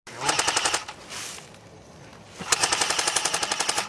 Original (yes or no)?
yes